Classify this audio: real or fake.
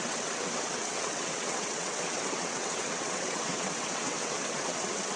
fake